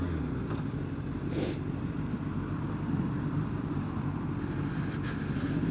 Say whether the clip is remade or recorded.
recorded